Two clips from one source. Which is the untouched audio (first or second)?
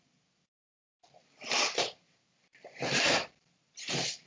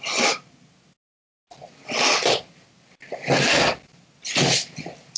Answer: second